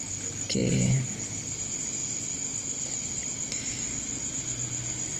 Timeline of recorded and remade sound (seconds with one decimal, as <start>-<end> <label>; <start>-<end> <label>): 0.0-5.2 recorded